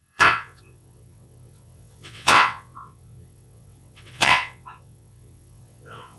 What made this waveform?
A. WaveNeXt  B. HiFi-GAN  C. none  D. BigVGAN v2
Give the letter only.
A